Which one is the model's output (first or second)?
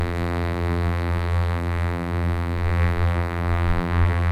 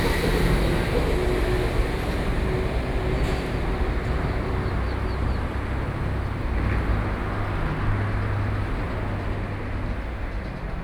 first